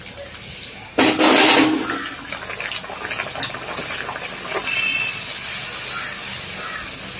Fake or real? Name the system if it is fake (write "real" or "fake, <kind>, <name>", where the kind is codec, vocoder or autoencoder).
real